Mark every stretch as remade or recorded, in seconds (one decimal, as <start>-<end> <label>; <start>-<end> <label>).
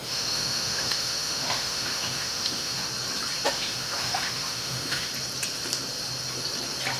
0.0-2.9 remade; 2.9-3.5 recorded; 3.5-5.1 remade; 5.1-7.0 recorded